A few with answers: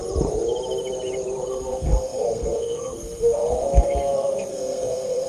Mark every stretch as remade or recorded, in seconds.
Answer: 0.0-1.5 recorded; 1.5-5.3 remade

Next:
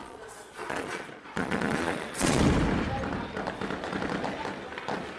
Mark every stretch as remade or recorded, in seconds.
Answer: 0.0-2.4 remade; 2.4-5.2 recorded

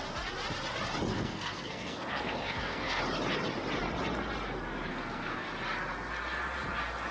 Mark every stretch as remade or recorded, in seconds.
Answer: 0.0-1.1 recorded; 1.1-3.0 remade; 3.0-4.9 recorded; 4.9-5.5 remade; 5.5-7.1 recorded